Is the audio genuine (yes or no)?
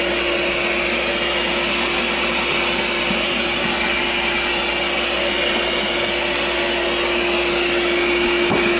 yes